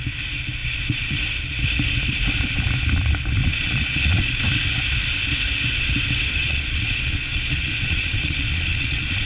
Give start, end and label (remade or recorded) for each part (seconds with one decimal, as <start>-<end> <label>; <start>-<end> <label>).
0.0-0.6 recorded; 0.6-1.2 remade; 1.2-3.4 recorded; 3.4-4.4 remade; 4.4-6.4 recorded; 6.4-9.3 remade